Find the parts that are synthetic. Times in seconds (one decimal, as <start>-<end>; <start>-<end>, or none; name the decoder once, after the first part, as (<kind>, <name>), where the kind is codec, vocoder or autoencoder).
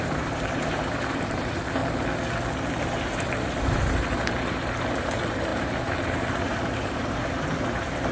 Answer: 0.0-1.8 (vocoder, BigVGAN v2); 2.8-8.1